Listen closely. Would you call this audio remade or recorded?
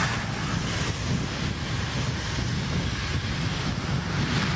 recorded